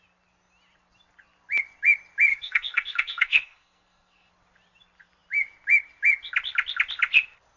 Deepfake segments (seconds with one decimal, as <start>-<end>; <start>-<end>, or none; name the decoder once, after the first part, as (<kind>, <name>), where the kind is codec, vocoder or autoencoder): 2.3-4.3 (codec, SNAC)

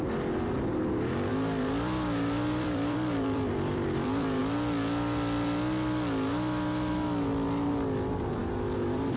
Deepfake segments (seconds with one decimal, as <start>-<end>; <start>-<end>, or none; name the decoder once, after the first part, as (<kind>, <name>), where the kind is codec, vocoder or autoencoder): 1.3-4.4 (vocoder, BigVGAN v2); 8.4-9.2

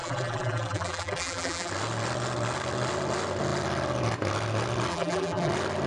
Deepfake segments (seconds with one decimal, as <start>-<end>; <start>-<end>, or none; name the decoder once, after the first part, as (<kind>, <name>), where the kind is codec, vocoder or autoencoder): 0.0-1.7 (vocoder, BigVGAN v2); 4.9-5.5

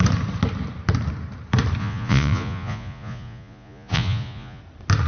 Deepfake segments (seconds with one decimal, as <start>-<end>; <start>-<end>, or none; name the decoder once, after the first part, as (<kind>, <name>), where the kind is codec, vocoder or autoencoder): 1.8-4.6 (vocoder, Vocos)

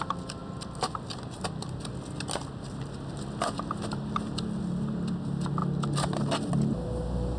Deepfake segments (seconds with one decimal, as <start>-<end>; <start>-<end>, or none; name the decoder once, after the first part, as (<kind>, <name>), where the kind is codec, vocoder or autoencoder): none